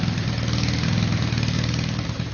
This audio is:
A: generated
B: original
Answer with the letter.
B